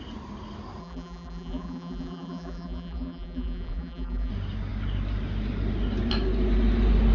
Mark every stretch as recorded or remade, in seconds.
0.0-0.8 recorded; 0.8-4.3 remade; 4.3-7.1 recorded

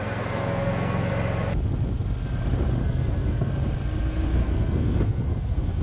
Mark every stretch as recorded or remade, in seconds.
0.0-1.1 remade; 1.1-2.8 recorded; 2.8-3.5 remade; 3.5-4.4 recorded; 4.4-5.8 remade

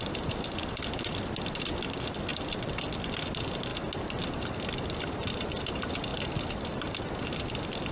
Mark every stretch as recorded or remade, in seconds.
0.0-7.9 recorded

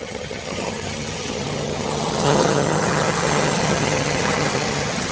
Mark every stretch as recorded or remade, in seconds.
0.0-5.1 remade

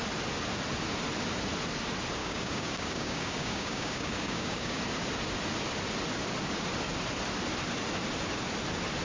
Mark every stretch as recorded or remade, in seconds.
0.0-2.2 recorded; 2.2-4.8 remade; 4.8-9.0 recorded